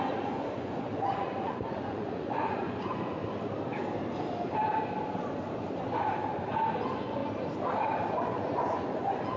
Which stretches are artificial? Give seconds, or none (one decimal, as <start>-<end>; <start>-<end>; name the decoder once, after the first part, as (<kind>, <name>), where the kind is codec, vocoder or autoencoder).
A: 0.0-3.2 (vocoder, Vocos); 6.8-7.2; 8.2-9.4